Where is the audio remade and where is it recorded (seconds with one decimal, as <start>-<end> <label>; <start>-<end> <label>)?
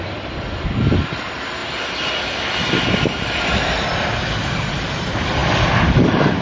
0.0-6.4 recorded